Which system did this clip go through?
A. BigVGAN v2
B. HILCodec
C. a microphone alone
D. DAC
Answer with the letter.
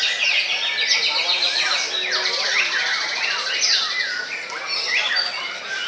C